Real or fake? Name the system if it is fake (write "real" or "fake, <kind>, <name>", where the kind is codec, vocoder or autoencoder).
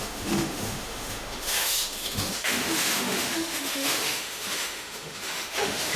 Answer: fake, autoencoder, DAC-VAE